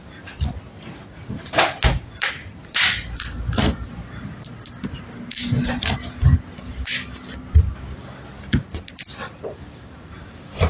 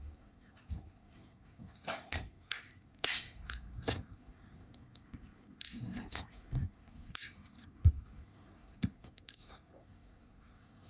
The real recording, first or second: first